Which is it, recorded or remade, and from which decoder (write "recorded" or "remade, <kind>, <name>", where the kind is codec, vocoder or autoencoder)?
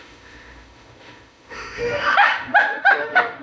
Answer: remade, autoencoder, DAC-VAE